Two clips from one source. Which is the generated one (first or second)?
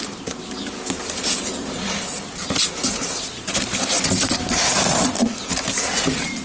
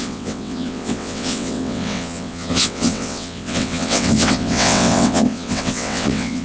second